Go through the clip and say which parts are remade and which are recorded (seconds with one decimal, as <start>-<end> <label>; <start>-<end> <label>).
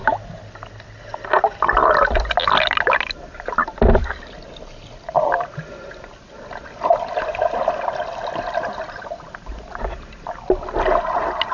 0.0-11.5 recorded